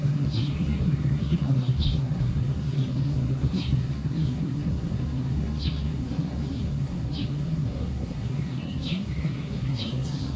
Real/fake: fake